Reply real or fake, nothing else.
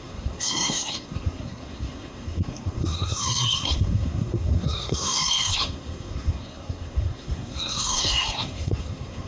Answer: fake